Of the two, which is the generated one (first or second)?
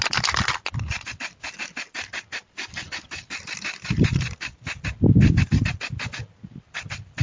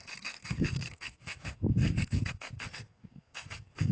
second